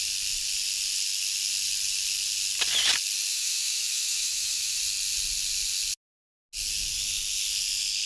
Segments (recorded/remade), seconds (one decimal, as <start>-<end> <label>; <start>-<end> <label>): 0.0-3.3 recorded; 3.3-4.8 remade; 4.8-8.1 recorded